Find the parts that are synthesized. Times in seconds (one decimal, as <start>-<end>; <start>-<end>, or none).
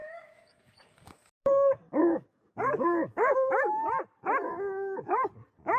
0.0-3.5; 4.5-5.3